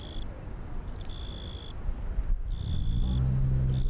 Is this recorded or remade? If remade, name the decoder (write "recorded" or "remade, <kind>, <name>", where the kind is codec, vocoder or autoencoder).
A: recorded